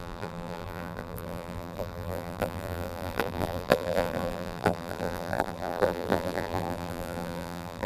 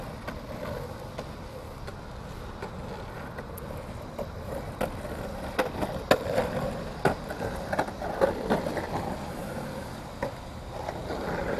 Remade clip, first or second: first